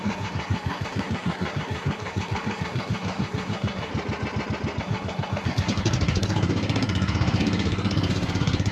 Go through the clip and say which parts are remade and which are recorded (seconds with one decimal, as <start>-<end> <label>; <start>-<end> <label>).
0.0-3.9 remade; 3.9-4.8 recorded; 4.8-8.7 remade